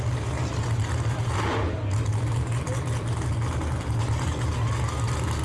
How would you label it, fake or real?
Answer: real